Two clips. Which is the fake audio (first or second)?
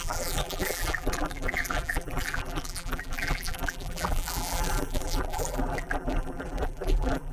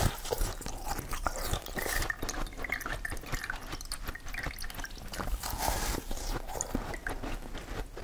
first